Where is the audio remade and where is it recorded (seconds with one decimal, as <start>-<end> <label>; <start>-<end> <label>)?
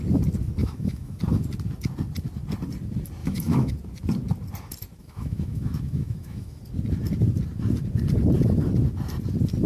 0.0-0.6 recorded; 0.6-1.2 remade; 1.2-3.2 recorded; 3.2-3.7 remade; 3.7-5.0 recorded; 5.0-6.6 remade; 6.6-9.7 recorded